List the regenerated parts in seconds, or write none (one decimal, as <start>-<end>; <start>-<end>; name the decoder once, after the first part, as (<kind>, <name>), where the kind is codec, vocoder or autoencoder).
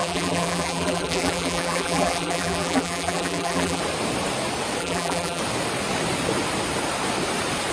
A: 0.0-3.8 (vocoder, BigVGAN v2); 4.8-5.4